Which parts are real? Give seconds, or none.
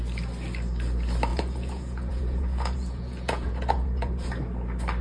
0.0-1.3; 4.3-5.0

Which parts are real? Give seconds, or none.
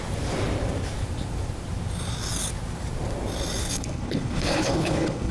0.0-3.6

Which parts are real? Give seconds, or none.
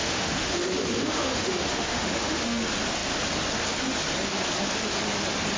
2.6-5.6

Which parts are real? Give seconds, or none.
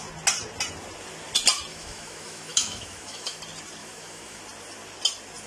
0.0-1.7; 3.4-3.8; 4.4-5.5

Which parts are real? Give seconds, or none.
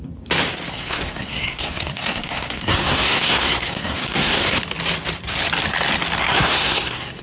0.0-0.7; 4.6-6.2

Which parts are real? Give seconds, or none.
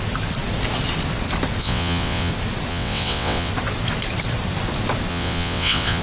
0.0-1.6; 2.3-2.7; 3.5-5.1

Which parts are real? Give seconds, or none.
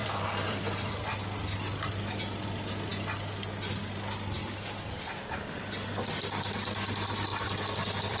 1.0-7.3